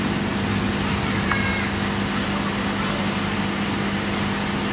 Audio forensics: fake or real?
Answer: real